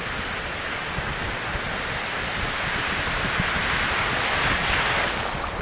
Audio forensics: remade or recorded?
recorded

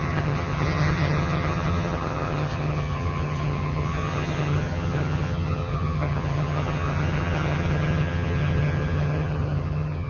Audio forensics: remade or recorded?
remade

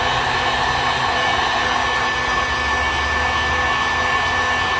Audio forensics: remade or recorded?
recorded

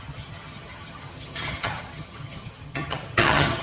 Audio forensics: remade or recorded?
remade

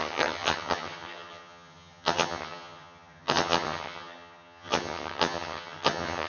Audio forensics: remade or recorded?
remade